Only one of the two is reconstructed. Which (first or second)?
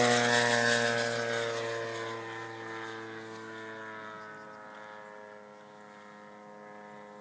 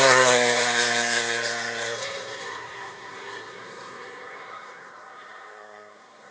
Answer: second